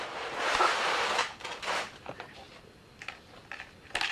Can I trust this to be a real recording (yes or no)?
no